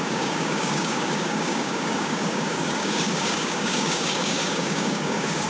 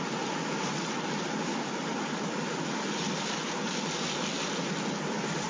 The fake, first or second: first